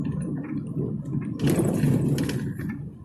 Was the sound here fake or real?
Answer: real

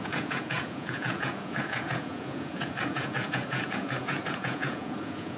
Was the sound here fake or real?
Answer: fake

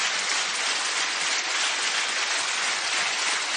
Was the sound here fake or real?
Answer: fake